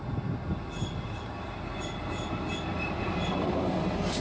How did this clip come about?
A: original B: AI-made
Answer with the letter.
A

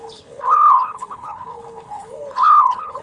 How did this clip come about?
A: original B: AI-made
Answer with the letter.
B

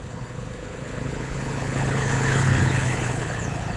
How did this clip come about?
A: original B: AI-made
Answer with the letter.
B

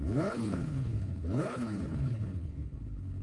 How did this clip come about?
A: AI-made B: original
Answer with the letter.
A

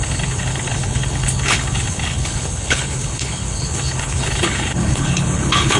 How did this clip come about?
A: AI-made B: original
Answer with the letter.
A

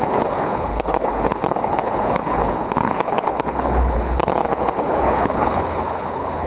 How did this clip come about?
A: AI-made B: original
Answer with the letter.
A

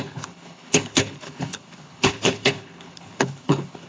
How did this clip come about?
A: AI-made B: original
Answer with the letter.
A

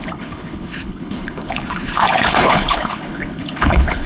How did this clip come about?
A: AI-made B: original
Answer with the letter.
A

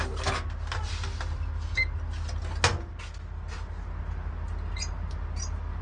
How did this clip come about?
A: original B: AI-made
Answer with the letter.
A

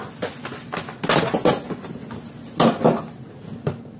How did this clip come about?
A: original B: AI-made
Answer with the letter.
A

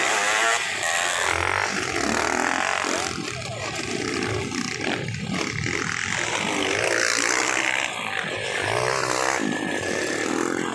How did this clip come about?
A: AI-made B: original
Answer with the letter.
B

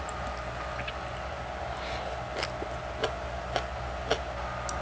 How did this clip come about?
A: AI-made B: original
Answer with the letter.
B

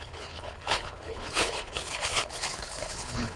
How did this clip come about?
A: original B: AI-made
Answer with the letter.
B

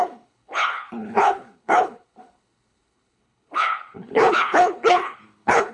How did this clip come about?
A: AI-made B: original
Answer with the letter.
A